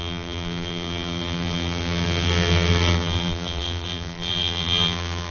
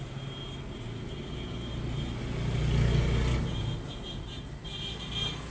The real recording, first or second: second